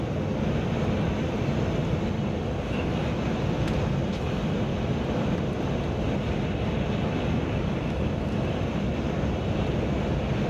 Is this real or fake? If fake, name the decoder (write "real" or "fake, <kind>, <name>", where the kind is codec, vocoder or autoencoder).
real